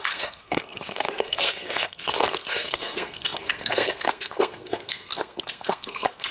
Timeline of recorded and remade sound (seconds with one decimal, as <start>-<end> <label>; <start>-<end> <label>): 0.0-6.3 remade